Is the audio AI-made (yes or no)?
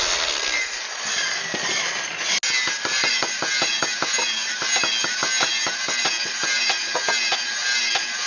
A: no